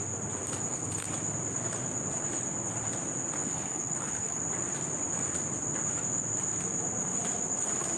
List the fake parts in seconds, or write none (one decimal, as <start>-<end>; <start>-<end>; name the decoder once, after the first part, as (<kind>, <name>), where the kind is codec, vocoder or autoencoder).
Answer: 3.4-4.4 (codec, HILCodec)